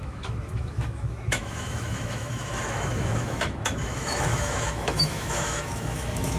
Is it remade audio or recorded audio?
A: remade